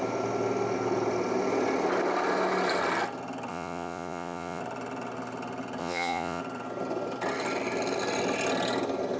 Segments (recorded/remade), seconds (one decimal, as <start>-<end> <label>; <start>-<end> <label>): 0.0-3.5 recorded; 3.5-4.6 remade; 4.6-5.8 recorded; 5.8-6.4 remade; 6.4-9.2 recorded